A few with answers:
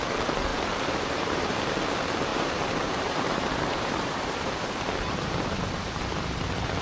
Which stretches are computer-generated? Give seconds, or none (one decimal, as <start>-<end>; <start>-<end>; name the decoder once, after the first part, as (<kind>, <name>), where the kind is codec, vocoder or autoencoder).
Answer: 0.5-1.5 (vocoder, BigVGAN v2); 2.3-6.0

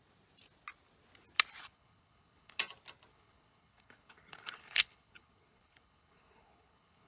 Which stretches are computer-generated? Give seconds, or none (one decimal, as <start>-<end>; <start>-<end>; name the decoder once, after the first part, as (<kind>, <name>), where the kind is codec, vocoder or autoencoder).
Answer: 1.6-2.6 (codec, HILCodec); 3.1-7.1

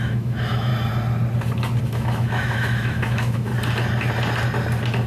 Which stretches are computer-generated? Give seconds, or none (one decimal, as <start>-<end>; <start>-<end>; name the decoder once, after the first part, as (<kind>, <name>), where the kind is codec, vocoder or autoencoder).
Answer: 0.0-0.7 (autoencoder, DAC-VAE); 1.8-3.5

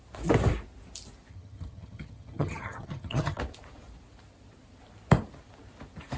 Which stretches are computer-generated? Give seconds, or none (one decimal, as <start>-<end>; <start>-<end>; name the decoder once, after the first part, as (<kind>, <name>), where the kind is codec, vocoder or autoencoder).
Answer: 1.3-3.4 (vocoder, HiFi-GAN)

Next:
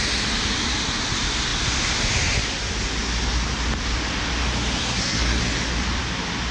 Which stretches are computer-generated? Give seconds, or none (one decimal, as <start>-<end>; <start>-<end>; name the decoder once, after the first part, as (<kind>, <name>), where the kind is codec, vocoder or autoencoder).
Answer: 4.8-5.4 (codec, SNAC)

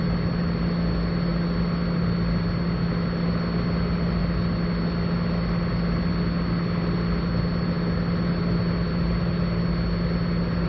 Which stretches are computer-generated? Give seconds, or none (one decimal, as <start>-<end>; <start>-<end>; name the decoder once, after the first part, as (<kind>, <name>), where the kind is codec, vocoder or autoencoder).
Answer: none

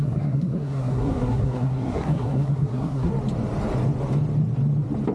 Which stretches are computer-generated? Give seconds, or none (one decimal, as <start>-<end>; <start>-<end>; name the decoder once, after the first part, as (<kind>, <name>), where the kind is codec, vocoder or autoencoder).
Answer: 0.0-3.1 (codec, SNAC)

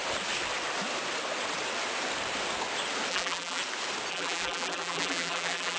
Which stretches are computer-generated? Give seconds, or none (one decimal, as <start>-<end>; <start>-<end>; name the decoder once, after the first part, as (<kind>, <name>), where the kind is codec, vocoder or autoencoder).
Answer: 3.1-3.6 (vocoder, BigVGAN v2); 4.1-5.8